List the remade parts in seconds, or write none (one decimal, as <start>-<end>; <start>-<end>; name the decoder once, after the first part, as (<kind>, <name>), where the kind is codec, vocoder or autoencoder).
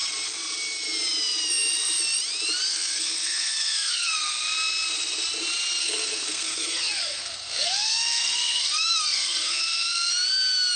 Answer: 2.7-4.3 (codec, SNAC); 5.8-10.1